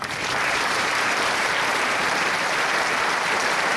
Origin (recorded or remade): remade